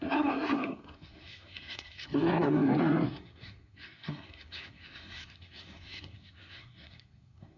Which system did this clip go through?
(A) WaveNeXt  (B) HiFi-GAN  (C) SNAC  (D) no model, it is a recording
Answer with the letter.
C